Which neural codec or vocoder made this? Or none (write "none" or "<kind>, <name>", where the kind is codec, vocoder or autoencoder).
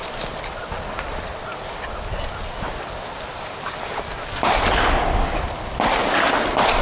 none